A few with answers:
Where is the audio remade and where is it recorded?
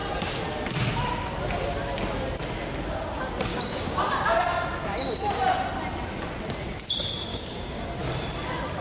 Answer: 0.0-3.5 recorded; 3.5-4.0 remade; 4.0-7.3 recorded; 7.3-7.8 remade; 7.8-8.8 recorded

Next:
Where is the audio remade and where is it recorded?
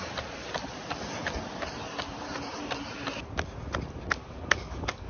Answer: 0.0-4.2 recorded; 4.2-5.1 remade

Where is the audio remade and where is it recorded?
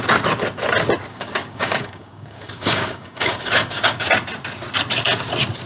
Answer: 0.0-1.1 recorded; 1.1-4.1 remade; 4.1-5.7 recorded